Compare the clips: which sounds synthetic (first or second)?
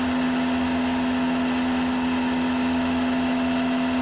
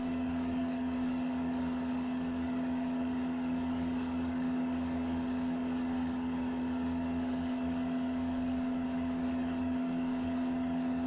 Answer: second